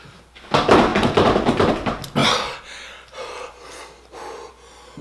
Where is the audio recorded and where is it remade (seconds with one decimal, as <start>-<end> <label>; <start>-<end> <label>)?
0.0-5.0 recorded